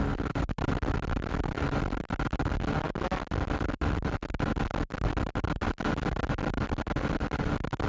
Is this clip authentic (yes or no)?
yes